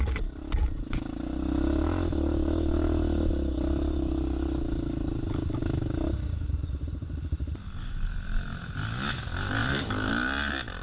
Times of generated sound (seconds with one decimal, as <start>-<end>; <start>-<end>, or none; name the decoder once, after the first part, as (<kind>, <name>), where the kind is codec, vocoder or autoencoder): 9.6-10.1 (vocoder, BigVGAN v2)